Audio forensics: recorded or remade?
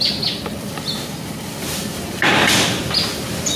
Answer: recorded